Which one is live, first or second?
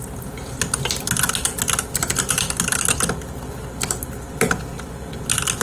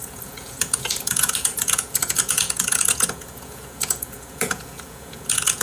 first